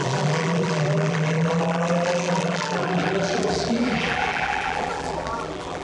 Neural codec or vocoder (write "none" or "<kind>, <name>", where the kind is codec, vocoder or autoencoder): vocoder, BigVGAN v2